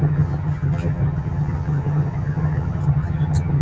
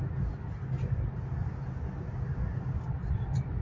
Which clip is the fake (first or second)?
first